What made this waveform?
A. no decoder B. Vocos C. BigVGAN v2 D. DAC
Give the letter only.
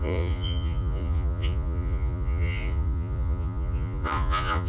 B